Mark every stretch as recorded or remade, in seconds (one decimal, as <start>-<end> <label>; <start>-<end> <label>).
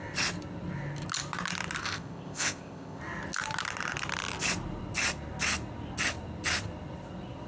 0.0-1.8 recorded; 1.8-3.0 remade; 3.0-7.5 recorded